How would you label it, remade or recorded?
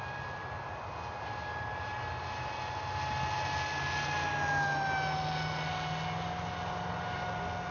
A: recorded